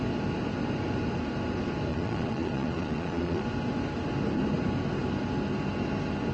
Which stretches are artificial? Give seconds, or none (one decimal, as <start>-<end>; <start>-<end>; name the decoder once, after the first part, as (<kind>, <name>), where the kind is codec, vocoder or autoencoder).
1.9-3.4 (vocoder, Vocos)